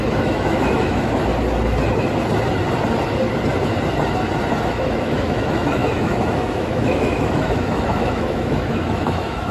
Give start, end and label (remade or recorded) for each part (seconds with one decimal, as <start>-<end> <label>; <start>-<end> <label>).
0.0-1.3 remade; 1.3-4.6 recorded; 4.6-9.5 remade